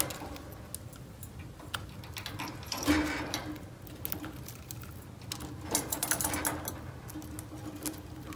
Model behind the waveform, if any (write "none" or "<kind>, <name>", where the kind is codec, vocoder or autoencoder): none